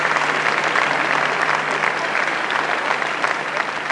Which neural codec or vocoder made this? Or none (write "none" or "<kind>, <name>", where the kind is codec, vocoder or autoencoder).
none